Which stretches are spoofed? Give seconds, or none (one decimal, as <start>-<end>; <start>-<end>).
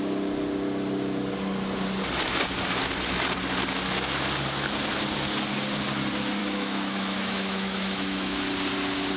6.4-8.4